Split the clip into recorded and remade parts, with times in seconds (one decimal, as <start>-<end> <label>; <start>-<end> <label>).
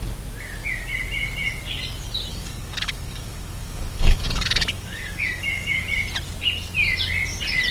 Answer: 0.0-2.3 recorded; 2.3-5.8 remade; 5.8-7.7 recorded